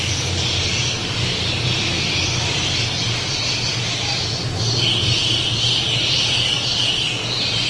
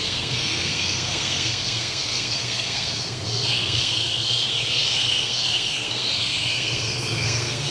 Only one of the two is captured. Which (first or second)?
first